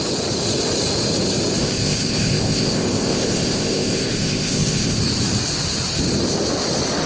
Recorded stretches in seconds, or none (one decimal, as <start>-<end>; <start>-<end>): 0.0-1.6; 5.0-7.1